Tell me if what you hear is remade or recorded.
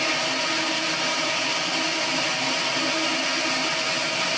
recorded